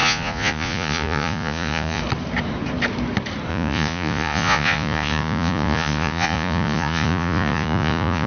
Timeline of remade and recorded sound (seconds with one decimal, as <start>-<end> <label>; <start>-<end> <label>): 0.0-2.0 remade; 2.0-3.5 recorded; 3.5-8.3 remade